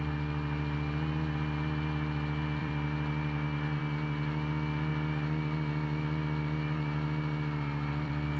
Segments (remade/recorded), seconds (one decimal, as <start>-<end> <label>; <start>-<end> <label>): 0.0-2.6 recorded; 2.6-3.8 remade; 3.8-4.9 recorded; 4.9-8.4 remade